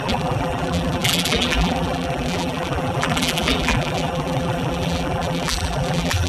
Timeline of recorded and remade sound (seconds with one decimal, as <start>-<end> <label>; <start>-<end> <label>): 0.0-6.3 remade

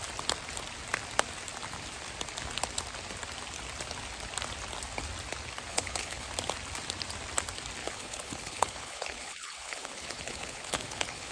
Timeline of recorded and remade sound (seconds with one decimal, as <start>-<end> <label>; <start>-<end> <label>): 0.0-5.7 recorded; 5.7-6.3 remade; 6.3-7.8 recorded; 7.8-11.3 remade